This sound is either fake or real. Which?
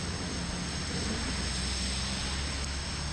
real